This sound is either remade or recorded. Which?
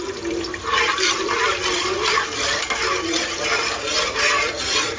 remade